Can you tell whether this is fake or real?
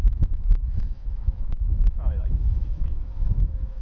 fake